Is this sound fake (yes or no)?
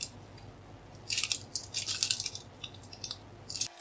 no